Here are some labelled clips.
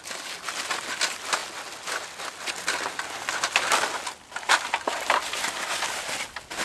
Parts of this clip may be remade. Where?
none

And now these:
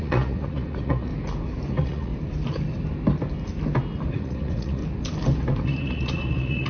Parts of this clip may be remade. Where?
0.0-1.1; 1.7-2.1; 4.1-4.8; 5.6-6.7

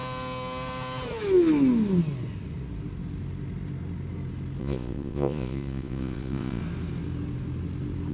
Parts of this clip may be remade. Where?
4.6-6.6

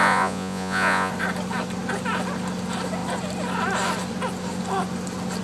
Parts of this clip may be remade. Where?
0.0-1.1

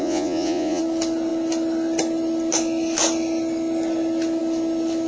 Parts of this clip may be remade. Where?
0.0-0.8